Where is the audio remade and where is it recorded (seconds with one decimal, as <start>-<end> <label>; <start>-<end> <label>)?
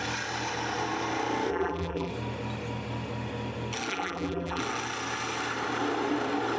0.0-1.5 recorded; 1.5-2.1 remade; 2.1-3.9 recorded; 3.9-4.6 remade; 4.6-6.6 recorded